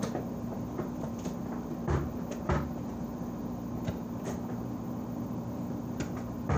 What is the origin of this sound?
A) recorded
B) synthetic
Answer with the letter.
B